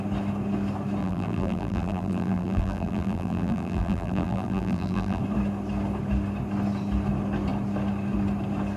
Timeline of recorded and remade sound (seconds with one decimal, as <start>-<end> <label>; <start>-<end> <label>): 0.0-1.0 recorded; 1.0-5.2 remade; 5.2-8.8 recorded

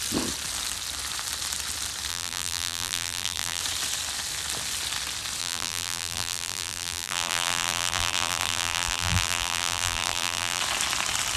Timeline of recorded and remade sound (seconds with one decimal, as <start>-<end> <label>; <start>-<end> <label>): 0.0-2.1 recorded; 2.1-3.6 remade; 3.6-5.4 recorded; 5.4-10.6 remade; 10.6-11.4 recorded

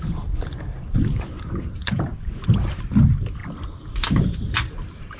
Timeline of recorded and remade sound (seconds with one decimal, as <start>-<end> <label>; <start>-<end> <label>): 0.0-2.1 remade; 2.1-2.7 recorded; 2.7-3.4 remade; 3.4-5.2 recorded

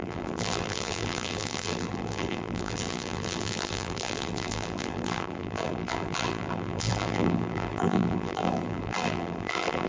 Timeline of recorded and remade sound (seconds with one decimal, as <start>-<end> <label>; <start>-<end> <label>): 0.0-9.9 remade

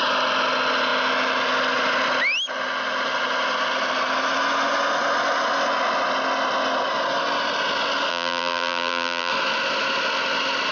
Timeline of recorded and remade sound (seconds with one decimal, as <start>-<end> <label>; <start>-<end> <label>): 0.0-8.1 recorded; 8.1-9.3 remade; 9.3-10.7 recorded

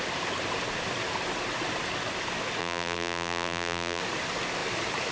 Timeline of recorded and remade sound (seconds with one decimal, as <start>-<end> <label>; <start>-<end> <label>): 0.0-2.6 recorded; 2.6-4.0 remade; 4.0-5.1 recorded